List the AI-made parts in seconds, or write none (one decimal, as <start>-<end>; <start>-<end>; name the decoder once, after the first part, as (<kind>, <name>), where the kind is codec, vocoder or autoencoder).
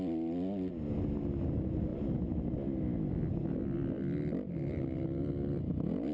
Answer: none